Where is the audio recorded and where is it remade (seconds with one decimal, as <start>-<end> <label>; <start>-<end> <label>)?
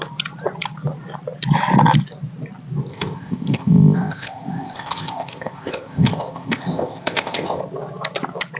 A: 0.0-2.9 recorded; 2.9-7.6 remade; 7.6-8.6 recorded